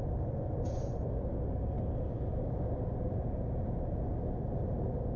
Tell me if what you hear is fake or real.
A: real